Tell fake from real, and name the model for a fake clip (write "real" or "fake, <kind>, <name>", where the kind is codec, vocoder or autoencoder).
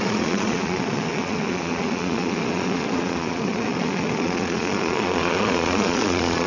fake, vocoder, Vocos